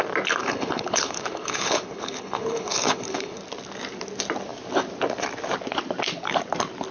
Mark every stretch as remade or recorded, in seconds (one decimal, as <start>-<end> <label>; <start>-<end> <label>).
0.0-0.4 recorded; 0.4-3.4 remade; 3.4-6.9 recorded